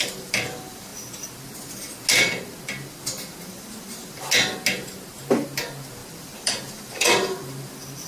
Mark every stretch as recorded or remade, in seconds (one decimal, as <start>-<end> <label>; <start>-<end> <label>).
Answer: 0.0-6.0 recorded; 6.0-7.4 remade; 7.4-8.1 recorded